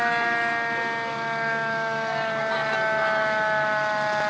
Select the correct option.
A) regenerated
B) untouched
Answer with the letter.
B